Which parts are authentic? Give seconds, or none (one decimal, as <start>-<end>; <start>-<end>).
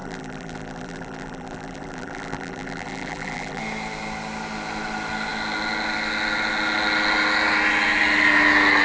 3.6-8.8